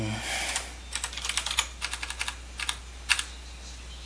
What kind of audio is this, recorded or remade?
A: recorded